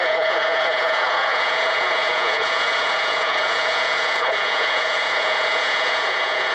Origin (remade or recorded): remade